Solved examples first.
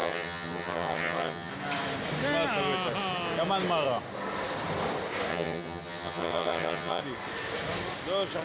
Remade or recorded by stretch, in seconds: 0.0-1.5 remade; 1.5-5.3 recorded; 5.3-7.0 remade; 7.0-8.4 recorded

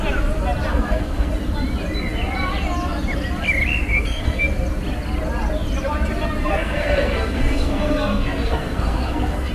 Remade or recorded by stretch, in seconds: 0.0-0.7 recorded; 0.7-1.3 remade; 1.3-3.9 recorded; 3.9-4.4 remade; 4.4-6.4 recorded; 6.4-9.5 remade

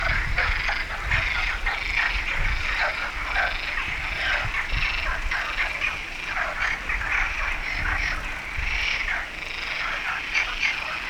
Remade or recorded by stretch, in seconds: 0.0-11.1 recorded